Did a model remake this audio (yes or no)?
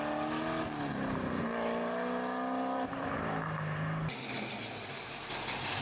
no